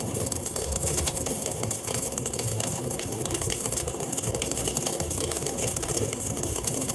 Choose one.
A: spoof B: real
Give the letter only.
A